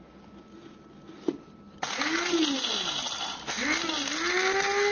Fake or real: real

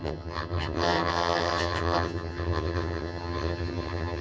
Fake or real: fake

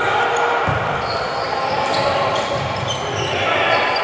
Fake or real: real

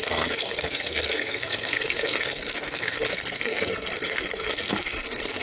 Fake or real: fake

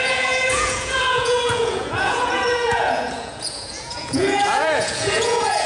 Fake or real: fake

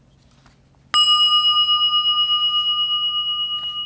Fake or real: real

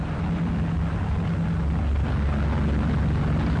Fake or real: real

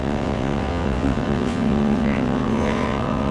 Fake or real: fake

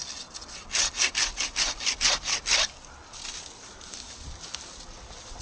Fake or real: real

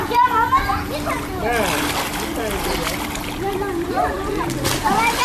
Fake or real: real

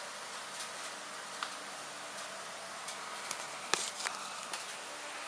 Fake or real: real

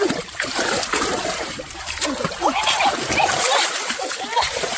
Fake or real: fake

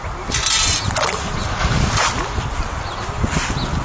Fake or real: real